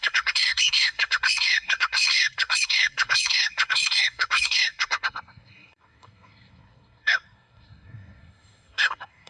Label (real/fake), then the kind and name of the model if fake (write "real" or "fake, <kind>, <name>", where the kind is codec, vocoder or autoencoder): fake, codec, SNAC